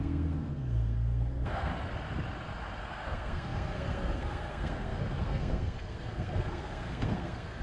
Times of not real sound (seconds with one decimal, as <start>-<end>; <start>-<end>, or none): 0.0-1.7; 2.8-7.6